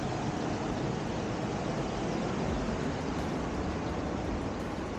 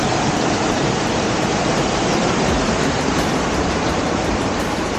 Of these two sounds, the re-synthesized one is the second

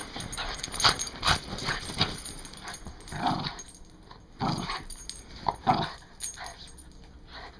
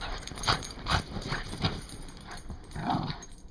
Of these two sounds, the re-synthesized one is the second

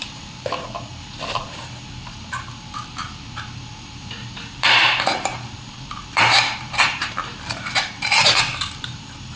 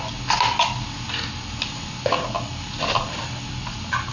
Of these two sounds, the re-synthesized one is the first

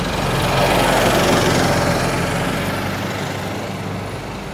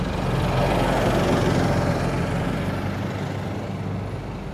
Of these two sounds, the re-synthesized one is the second